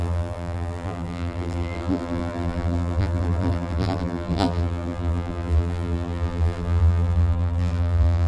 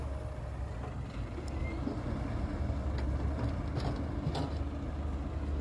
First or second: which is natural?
second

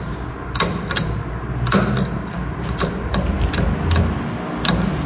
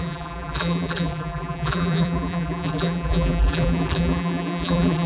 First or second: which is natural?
first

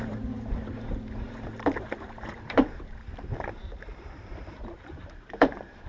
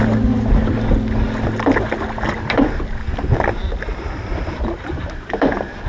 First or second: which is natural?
second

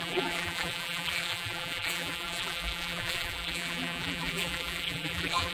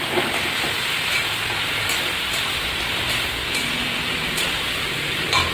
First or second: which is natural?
second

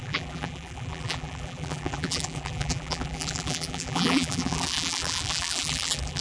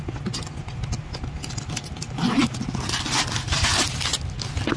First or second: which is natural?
second